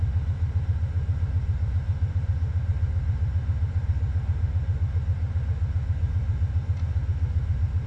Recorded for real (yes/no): yes